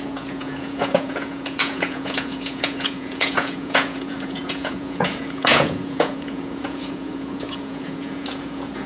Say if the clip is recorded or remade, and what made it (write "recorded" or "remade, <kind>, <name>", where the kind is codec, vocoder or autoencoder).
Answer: remade, vocoder, Vocos